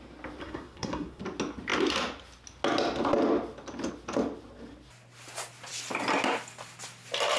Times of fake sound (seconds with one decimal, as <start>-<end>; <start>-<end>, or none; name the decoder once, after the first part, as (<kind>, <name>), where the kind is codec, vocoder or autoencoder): 0.4-1.2 (codec, SNAC)